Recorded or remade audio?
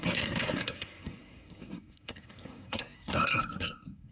remade